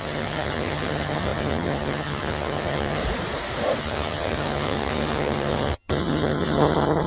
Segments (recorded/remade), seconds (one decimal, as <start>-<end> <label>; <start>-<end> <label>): 0.0-3.0 remade; 3.0-3.8 recorded; 3.8-7.1 remade